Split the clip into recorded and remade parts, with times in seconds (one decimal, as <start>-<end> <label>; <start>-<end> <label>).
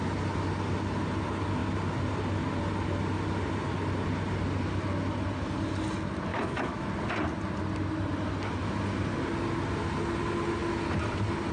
0.0-6.3 recorded; 6.3-6.9 remade; 6.9-11.5 recorded